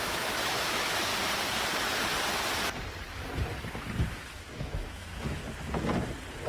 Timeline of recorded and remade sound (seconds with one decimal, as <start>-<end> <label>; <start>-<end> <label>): 0.0-1.1 remade; 1.1-4.1 recorded; 4.1-5.4 remade; 5.4-6.5 recorded